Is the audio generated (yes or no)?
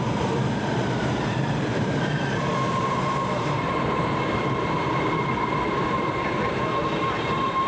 yes